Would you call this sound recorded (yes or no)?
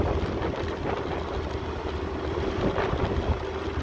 yes